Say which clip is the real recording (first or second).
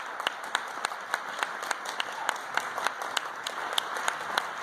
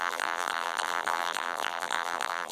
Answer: first